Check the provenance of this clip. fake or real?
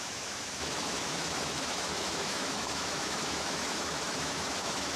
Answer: fake